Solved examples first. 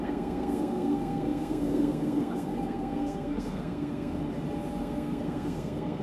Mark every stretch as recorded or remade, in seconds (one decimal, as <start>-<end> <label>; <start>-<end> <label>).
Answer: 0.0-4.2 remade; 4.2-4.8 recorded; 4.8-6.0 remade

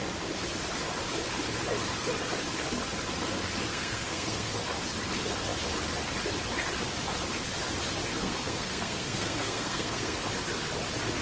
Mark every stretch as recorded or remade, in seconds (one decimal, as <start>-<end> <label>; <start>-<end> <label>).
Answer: 0.0-3.7 recorded; 3.7-4.5 remade; 4.5-8.2 recorded; 8.2-10.2 remade; 10.2-11.2 recorded

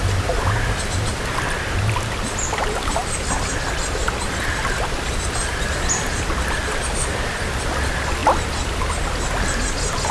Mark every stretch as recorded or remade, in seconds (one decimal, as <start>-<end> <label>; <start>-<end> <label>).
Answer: 0.0-10.1 recorded